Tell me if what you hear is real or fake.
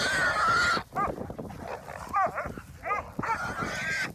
real